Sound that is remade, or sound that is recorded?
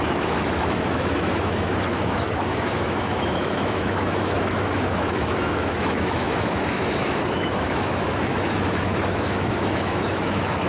remade